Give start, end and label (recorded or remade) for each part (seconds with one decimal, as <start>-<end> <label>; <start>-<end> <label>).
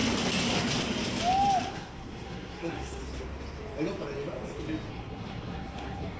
0.0-1.7 recorded; 1.7-3.0 remade; 3.0-4.9 recorded; 4.9-6.2 remade